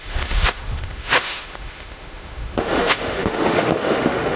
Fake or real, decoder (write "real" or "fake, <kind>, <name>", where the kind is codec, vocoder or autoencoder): fake, autoencoder, DAC-VAE